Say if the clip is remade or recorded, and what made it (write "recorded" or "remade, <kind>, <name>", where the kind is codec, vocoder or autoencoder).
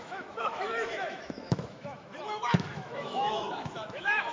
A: remade, autoencoder, DAC-VAE